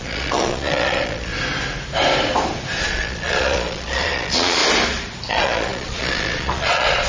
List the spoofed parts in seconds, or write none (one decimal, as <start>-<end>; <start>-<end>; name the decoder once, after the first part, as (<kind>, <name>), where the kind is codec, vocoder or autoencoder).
0.0-1.3 (vocoder, Vocos); 2.8-4.6; 5.3-7.1

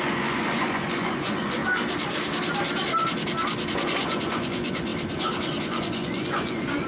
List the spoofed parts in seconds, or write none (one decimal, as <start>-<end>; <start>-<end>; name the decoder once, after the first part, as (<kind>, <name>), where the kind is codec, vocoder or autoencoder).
0.0-1.6 (vocoder, Vocos); 3.7-4.9; 5.6-6.9

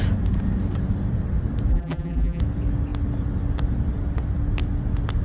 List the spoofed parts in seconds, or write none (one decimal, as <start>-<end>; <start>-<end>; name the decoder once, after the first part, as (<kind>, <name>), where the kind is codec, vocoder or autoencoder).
1.7-2.4 (vocoder, BigVGAN v2)

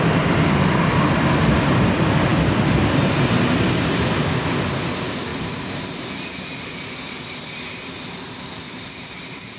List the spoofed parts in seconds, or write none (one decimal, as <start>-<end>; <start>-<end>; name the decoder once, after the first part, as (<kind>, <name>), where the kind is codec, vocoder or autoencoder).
none